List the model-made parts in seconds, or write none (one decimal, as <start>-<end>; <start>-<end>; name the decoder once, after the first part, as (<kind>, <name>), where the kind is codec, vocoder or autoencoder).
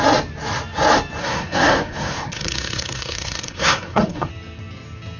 1.2-4.3 (codec, SNAC)